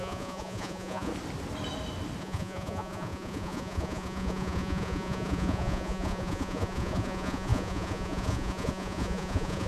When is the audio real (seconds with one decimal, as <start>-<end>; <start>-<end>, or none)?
1.1-2.2